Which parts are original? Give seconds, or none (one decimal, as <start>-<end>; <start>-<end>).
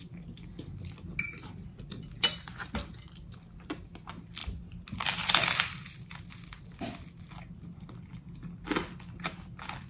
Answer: 0.0-9.9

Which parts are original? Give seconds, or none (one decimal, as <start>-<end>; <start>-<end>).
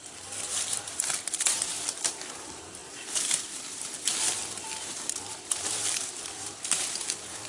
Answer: none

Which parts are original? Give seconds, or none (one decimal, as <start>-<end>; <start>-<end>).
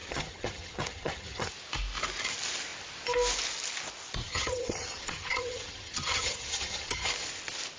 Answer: 1.5-4.2; 7.1-7.8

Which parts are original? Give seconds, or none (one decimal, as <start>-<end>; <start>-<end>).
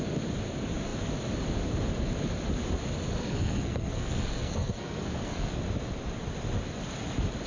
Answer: 0.0-3.2; 5.5-7.5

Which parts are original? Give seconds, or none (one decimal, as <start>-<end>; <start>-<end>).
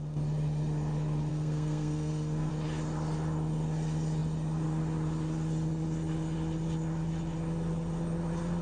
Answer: 0.0-1.3; 2.5-8.6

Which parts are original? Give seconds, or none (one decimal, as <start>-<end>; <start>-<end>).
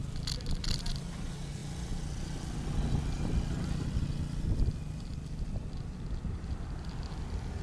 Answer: 0.0-7.6